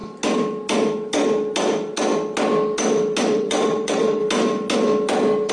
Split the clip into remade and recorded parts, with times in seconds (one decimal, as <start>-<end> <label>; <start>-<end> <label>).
0.0-3.3 recorded; 3.3-4.2 remade; 4.2-5.5 recorded